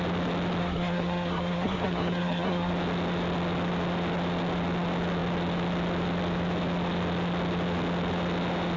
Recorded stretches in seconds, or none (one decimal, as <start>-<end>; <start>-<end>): 0.0-0.6; 2.7-8.8